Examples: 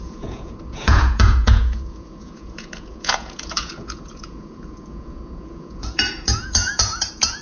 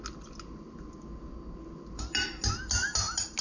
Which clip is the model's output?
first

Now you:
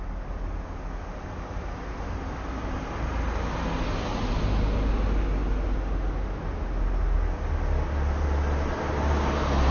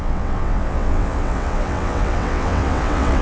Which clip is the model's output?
second